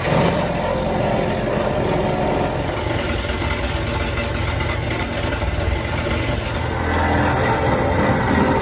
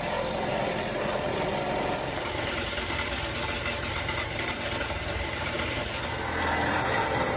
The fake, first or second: second